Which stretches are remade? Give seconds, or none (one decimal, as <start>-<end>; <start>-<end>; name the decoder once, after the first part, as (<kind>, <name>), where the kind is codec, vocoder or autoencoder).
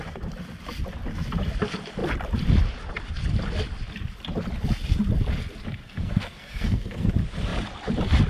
5.8-7.1 (codec, SNAC)